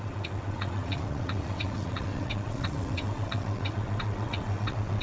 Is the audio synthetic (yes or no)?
yes